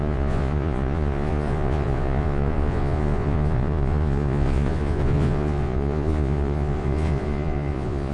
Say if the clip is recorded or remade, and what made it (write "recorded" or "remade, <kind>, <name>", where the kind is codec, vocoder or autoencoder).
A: remade, vocoder, Vocos